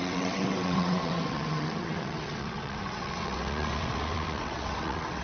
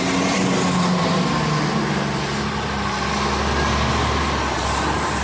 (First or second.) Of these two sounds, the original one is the second